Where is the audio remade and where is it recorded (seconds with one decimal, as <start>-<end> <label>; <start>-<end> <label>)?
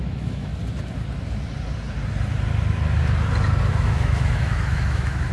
0.0-0.5 remade; 0.5-3.7 recorded; 3.7-5.3 remade